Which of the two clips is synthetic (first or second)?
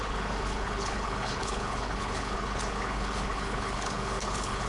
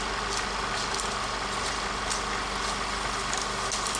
first